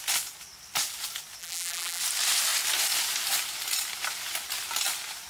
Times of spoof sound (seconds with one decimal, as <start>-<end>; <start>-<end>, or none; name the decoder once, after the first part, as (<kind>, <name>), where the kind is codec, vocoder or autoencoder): 1.4-2.0 (vocoder, BigVGAN v2)